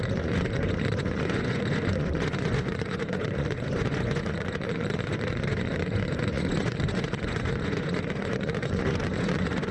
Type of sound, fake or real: fake